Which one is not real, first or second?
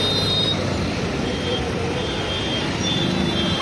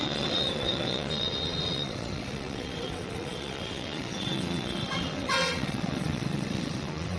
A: second